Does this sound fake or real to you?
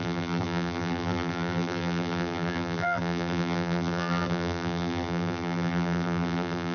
fake